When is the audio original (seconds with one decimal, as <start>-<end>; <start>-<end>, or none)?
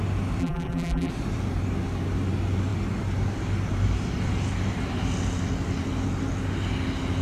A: 0.0-0.4; 1.1-7.2